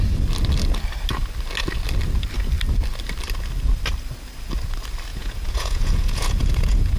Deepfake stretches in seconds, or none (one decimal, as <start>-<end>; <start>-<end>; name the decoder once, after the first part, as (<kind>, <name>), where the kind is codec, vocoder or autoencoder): 5.1-7.0 (vocoder, Vocos)